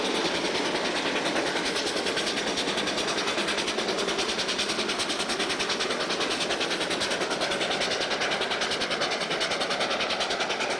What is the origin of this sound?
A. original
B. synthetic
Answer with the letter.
A